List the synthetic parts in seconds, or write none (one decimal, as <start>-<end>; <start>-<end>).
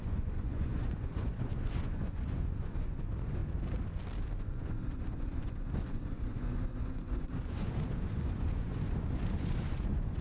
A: 0.0-3.4; 4.4-10.2